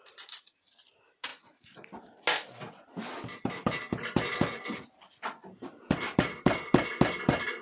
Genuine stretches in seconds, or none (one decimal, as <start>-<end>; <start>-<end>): 0.0-7.6